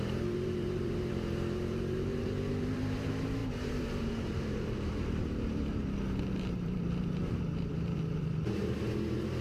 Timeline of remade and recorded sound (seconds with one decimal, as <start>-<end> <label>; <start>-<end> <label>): 0.0-9.4 remade